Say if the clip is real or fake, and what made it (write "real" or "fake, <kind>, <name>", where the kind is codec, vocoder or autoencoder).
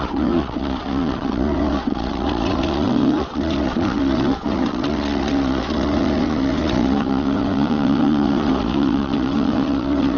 fake, vocoder, WaveNeXt